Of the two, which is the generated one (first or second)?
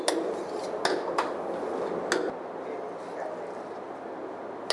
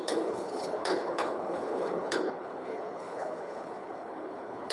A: second